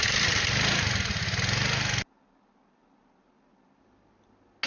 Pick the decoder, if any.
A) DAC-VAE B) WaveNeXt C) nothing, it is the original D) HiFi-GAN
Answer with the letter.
C